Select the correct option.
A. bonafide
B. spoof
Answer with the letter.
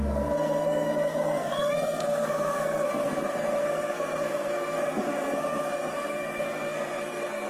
B